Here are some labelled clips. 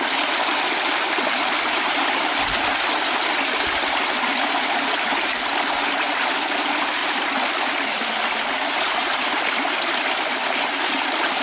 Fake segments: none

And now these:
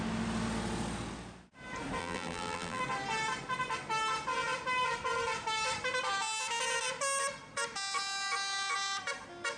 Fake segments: 2.0-2.8 (vocoder, BigVGAN v2)

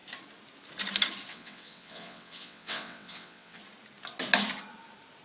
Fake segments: 1.3-3.6 (vocoder, WaveNeXt)

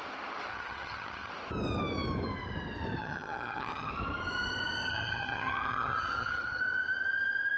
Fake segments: 0.5-1.3 (vocoder, HiFi-GAN); 3.0-3.9; 4.9-6.6